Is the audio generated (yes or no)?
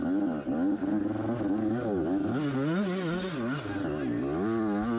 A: no